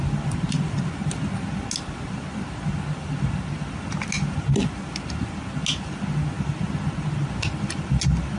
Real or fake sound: real